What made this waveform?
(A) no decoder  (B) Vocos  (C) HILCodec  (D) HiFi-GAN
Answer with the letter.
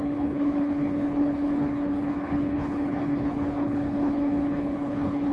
C